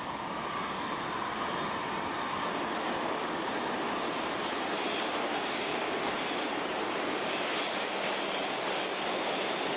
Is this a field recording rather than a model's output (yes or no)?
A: yes